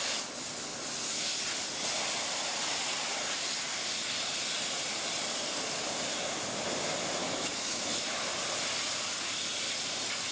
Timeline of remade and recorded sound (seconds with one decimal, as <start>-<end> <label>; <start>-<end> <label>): 0.0-7.2 recorded; 7.2-8.3 remade; 8.3-10.3 recorded

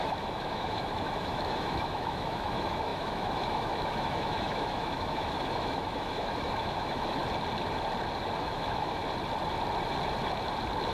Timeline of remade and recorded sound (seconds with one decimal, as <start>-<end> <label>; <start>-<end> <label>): 0.0-7.2 remade; 7.2-8.4 recorded; 8.4-9.0 remade; 9.0-10.9 recorded

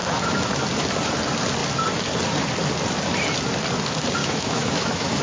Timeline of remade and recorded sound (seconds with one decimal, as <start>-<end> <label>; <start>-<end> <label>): 0.0-0.6 remade; 0.6-4.2 recorded; 4.2-5.2 remade

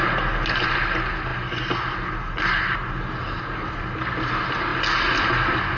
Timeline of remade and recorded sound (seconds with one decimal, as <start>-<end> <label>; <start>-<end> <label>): 0.0-5.8 recorded